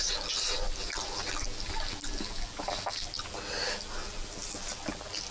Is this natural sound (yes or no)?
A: yes